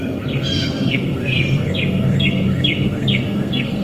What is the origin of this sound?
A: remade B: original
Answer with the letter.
A